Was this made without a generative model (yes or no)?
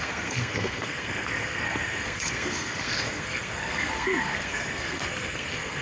no